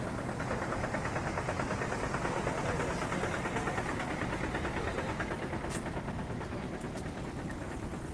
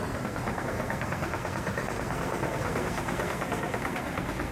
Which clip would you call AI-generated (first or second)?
second